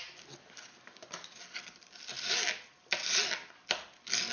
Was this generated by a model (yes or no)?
no